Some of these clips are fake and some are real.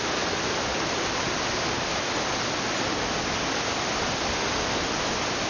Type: real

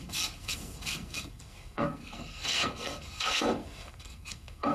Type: fake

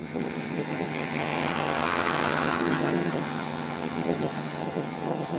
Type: fake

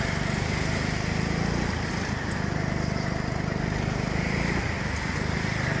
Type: real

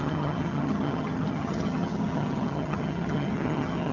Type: fake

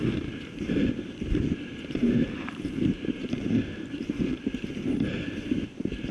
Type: fake